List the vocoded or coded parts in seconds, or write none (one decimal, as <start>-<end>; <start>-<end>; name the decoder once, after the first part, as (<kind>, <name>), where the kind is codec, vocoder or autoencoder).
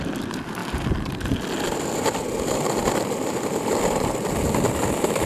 0.0-5.3 (vocoder, BigVGAN v2)